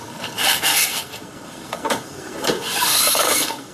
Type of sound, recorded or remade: remade